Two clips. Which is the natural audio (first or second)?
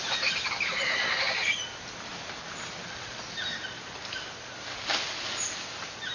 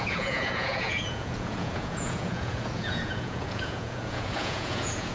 first